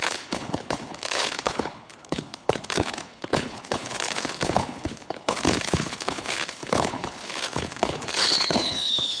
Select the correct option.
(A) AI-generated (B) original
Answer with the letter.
A